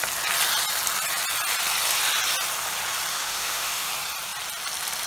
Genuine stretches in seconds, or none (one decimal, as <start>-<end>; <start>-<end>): 0.0-3.1; 3.9-5.1